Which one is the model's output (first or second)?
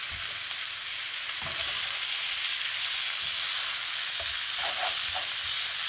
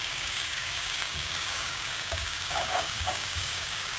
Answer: second